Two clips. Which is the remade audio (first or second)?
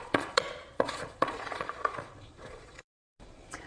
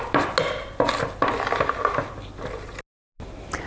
first